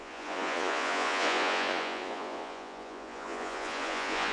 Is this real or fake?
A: fake